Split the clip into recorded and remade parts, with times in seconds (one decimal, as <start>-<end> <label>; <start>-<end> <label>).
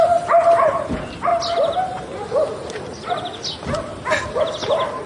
0.0-5.1 recorded